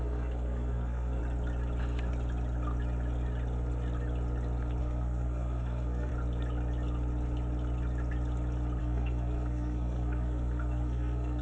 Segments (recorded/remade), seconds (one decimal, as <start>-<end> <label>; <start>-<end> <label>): 0.0-1.2 remade; 1.2-4.8 recorded; 4.8-6.1 remade; 6.1-8.8 recorded; 8.8-11.4 remade